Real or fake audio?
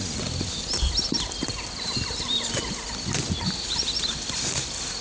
real